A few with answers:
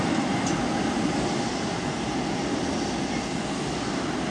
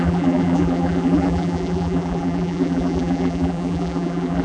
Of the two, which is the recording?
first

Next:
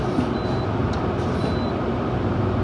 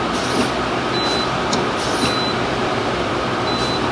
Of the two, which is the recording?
second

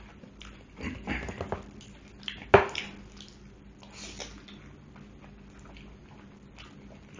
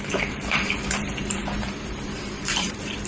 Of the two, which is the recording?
first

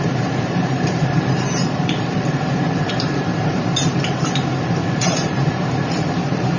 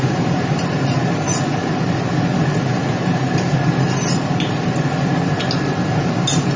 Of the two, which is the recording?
second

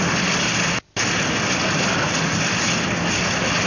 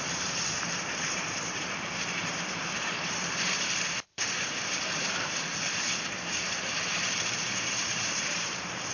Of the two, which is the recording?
first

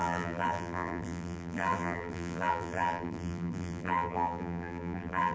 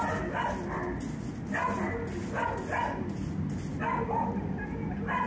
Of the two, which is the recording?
second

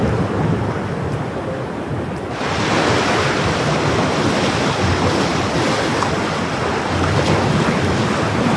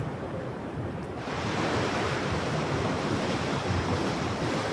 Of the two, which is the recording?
first